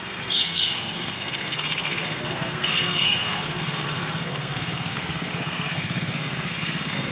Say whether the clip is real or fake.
fake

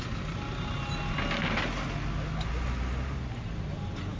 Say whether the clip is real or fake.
real